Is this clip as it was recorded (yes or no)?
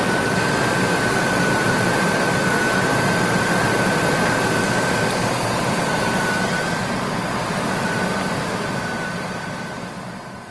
yes